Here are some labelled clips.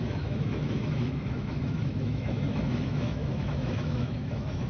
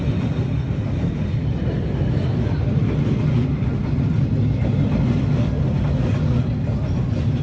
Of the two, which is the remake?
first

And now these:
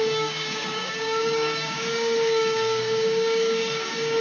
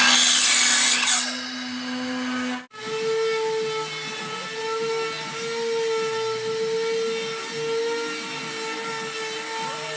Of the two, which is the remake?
first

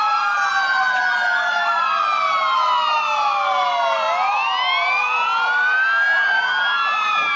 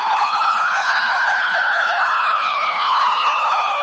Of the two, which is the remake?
second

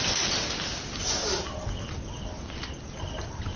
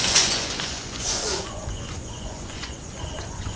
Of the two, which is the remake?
second